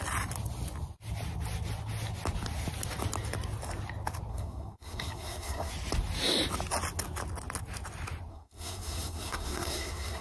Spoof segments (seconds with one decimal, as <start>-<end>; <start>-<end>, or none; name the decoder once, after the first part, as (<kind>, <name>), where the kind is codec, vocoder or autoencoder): 4.3-5.7 (codec, SNAC); 8.3-10.2